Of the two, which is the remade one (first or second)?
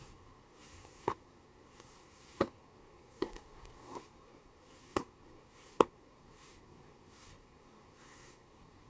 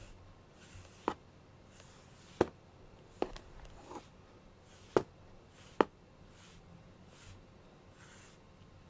first